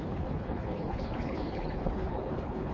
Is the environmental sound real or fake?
fake